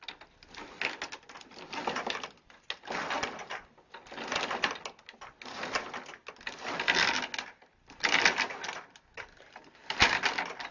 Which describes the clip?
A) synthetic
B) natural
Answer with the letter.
B